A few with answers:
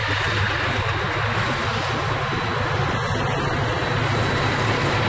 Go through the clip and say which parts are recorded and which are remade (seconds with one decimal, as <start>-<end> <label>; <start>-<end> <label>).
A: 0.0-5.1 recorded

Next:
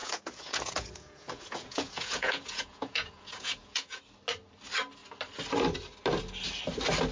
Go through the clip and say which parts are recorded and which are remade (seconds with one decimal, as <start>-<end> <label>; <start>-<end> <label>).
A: 0.0-4.0 remade; 4.0-7.1 recorded

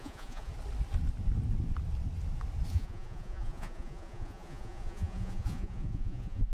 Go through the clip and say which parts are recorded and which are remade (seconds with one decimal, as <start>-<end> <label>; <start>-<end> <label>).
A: 0.0-0.5 remade; 0.5-2.7 recorded; 2.7-6.5 remade